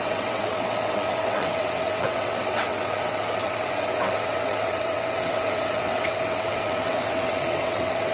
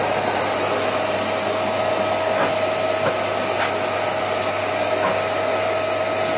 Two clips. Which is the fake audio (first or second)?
first